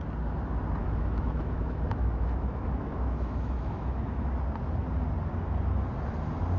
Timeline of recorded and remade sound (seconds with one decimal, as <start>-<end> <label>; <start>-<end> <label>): 0.0-0.8 recorded; 0.8-4.3 remade; 4.3-6.6 recorded